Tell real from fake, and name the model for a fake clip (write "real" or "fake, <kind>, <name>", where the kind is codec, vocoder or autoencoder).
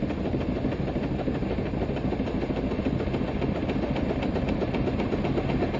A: real